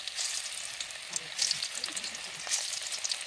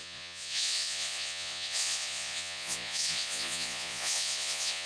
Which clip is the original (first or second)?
first